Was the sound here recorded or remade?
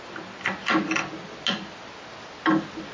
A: recorded